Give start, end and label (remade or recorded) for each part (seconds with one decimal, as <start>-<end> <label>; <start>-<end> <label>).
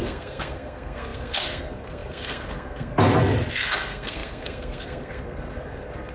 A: 0.0-2.9 remade; 2.9-3.5 recorded; 3.5-6.1 remade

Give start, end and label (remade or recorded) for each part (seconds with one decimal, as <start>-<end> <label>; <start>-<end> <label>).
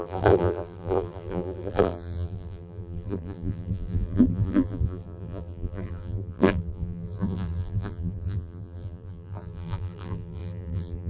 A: 0.0-11.1 remade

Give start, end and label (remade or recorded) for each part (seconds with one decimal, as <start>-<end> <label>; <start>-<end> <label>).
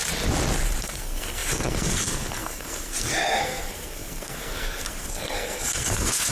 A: 0.0-0.8 recorded; 0.8-6.3 remade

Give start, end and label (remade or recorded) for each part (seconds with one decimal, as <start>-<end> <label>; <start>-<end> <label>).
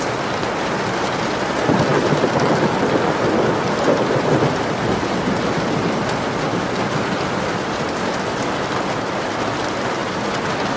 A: 0.0-10.8 recorded